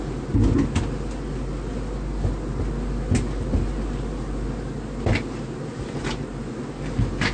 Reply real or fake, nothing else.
real